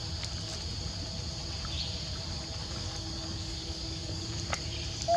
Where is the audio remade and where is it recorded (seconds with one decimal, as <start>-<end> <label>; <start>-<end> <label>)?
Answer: 0.0-2.6 recorded; 2.6-4.4 remade; 4.4-5.2 recorded